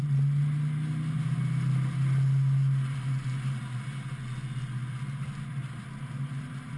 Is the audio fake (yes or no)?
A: no